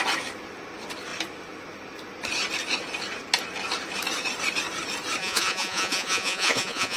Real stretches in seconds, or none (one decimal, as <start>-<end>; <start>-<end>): 0.0-5.2